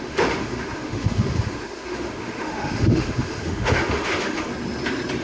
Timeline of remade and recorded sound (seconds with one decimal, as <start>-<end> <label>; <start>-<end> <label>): 0.0-4.5 remade; 4.5-5.2 recorded